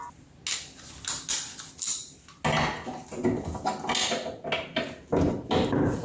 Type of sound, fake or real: real